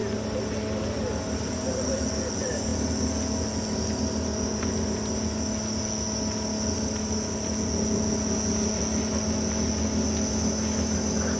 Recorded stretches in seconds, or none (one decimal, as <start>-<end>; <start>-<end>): 0.0-11.4